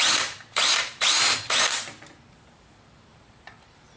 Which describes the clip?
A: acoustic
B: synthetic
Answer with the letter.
B